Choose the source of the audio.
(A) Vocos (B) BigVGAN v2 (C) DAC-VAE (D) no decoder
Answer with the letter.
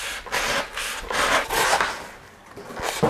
D